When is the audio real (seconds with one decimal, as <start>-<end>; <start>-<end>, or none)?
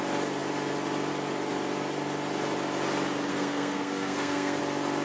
0.0-3.3; 4.6-5.0